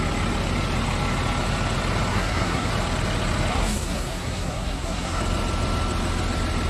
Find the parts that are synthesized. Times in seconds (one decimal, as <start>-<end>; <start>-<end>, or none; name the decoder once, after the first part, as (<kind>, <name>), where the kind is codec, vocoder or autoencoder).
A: 2.1-2.7 (codec, SNAC); 3.5-5.2